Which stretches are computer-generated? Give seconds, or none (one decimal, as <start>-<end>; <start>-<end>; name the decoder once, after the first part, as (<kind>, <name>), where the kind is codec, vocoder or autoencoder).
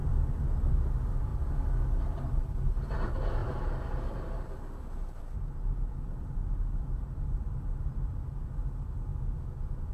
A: 9.1-9.9 (vocoder, Vocos)